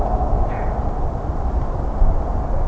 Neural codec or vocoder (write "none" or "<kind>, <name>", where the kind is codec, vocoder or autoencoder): none